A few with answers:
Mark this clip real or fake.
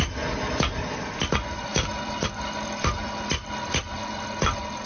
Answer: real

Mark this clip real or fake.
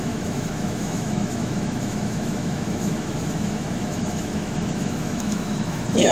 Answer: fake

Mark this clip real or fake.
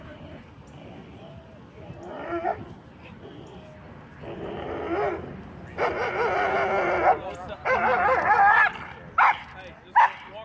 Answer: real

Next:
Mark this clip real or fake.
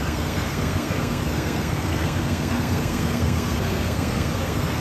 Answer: fake